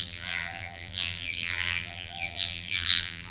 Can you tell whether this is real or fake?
fake